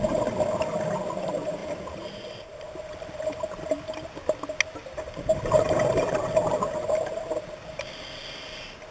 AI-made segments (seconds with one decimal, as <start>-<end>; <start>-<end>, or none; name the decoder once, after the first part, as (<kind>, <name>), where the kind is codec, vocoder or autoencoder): none